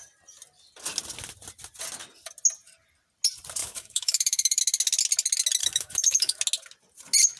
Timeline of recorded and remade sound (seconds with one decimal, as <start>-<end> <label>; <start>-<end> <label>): 0.0-3.6 recorded; 3.6-4.6 remade; 4.6-5.6 recorded; 5.6-6.4 remade; 6.4-7.4 recorded